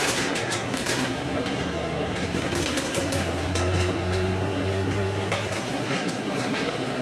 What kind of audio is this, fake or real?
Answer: fake